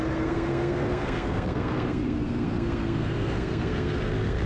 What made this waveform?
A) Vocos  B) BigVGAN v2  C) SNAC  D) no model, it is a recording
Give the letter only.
C